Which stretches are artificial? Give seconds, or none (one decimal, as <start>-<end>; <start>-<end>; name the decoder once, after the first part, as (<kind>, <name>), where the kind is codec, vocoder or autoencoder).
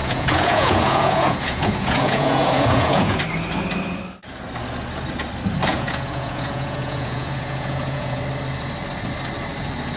0.0-3.2 (vocoder, Vocos); 5.7-8.2